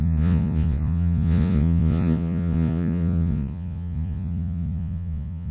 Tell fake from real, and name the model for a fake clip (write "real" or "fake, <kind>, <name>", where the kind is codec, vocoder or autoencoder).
fake, vocoder, Vocos